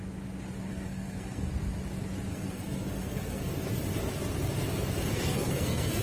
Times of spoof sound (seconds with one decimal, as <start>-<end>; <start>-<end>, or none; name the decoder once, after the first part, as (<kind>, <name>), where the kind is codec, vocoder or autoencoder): 0.7-1.5 (codec, SNAC); 2.3-3.5; 5.1-6.0